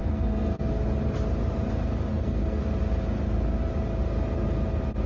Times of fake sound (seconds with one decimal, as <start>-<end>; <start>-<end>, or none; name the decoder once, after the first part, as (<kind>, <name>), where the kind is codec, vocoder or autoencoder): 0.0-0.7 (codec, SNAC); 2.1-2.6